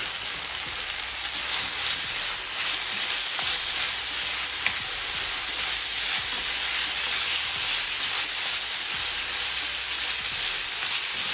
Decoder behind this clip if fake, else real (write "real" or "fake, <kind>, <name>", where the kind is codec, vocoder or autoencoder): real